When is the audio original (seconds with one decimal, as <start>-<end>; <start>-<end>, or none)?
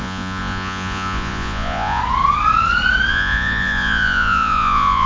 2.0-3.1